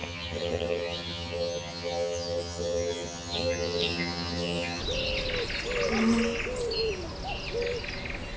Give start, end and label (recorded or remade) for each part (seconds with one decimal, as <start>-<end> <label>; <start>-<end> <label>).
0.0-4.8 remade; 4.8-8.4 recorded